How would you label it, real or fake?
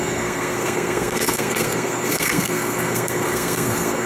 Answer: fake